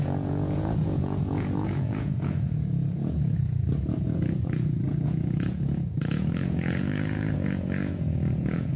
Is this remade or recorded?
remade